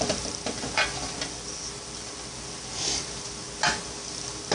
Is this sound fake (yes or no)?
no